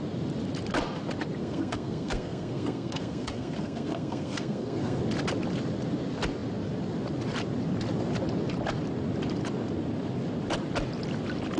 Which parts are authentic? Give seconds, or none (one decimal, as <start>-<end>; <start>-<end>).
0.0-1.4; 5.0-11.6

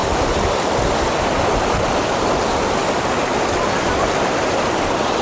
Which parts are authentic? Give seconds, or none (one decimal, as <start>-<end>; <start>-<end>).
none

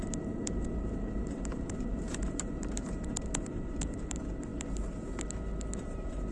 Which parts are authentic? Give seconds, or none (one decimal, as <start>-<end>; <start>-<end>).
4.5-5.8

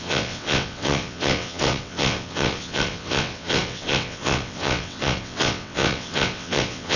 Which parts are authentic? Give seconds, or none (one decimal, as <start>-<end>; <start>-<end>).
none

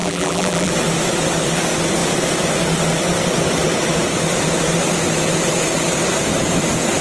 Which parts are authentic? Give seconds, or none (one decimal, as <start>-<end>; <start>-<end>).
0.7-7.0